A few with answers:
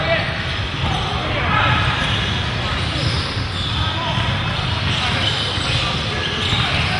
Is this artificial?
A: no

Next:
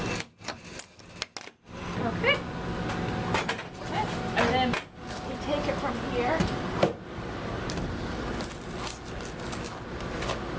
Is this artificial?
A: no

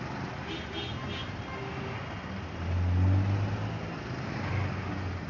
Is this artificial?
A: no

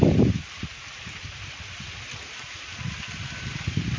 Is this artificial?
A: no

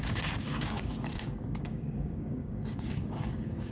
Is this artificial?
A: yes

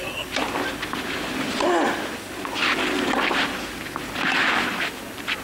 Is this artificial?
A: no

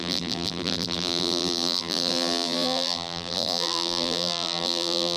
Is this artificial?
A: yes